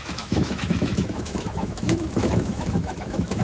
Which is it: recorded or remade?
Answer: remade